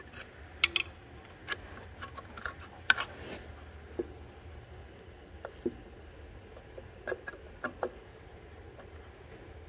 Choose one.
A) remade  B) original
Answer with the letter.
B